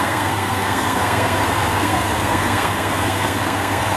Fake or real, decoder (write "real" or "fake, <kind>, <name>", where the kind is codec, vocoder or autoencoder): fake, codec, SNAC